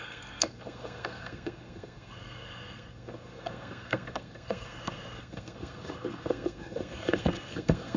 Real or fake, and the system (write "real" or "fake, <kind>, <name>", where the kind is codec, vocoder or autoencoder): fake, codec, SNAC